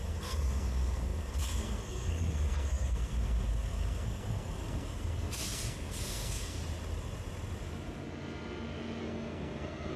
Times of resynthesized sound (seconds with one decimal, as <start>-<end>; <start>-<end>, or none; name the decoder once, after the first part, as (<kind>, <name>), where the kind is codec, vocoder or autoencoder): 0.0-6.6 (codec, SNAC); 9.0-10.0

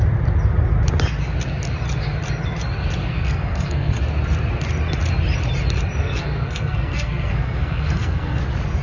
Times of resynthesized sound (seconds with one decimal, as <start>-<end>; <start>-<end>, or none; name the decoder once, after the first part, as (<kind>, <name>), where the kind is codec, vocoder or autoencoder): 3.0-4.0 (codec, SNAC); 6.0-8.4